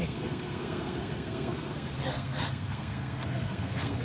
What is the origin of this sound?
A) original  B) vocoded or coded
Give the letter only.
B